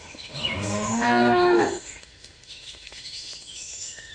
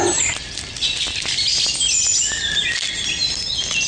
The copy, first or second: first